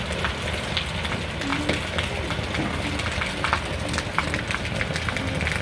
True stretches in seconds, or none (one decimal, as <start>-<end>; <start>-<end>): 0.0-5.6